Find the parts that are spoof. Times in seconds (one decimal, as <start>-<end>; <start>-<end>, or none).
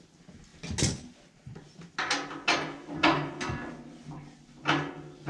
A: none